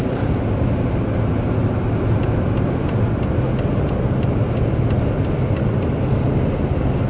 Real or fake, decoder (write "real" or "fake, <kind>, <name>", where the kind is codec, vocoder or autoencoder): real